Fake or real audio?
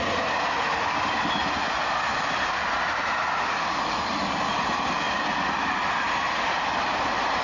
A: real